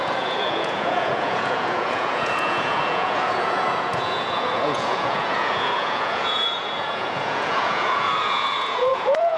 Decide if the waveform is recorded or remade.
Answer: remade